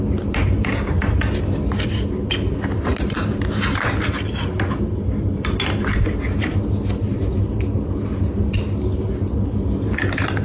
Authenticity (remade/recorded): recorded